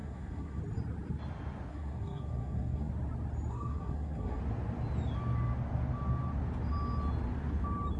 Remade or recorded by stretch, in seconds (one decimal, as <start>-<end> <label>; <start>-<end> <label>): 0.0-0.6 remade; 0.6-1.7 recorded; 1.7-2.9 remade; 2.9-3.5 recorded; 3.5-4.4 remade; 4.4-8.0 recorded